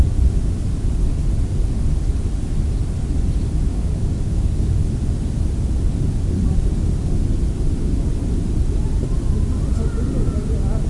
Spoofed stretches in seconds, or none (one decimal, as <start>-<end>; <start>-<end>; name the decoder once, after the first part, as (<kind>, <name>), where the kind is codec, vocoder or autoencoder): 3.7-4.7 (codec, DAC)